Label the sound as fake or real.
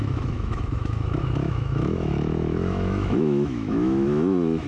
fake